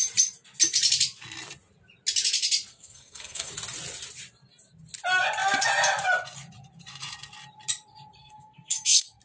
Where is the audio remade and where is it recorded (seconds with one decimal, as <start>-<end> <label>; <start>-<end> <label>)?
0.0-2.7 recorded; 2.7-3.5 remade; 3.5-8.2 recorded; 8.2-9.2 remade